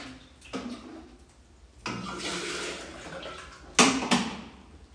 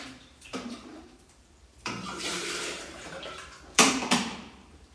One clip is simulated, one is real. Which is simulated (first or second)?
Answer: second